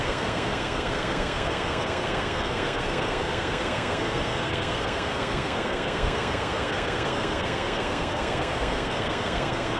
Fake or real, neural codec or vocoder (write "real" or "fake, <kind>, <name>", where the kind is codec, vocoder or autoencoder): fake, codec, SNAC